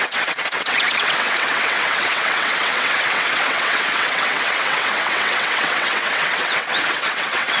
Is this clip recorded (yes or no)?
no